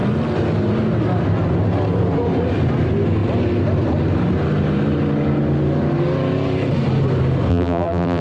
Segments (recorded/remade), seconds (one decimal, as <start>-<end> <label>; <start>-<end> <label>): 0.0-7.5 recorded; 7.5-8.2 remade